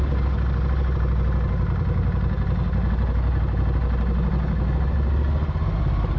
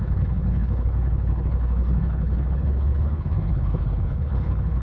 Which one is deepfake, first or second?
second